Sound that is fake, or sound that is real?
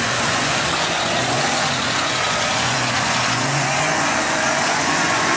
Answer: fake